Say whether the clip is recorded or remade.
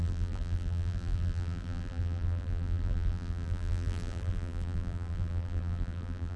remade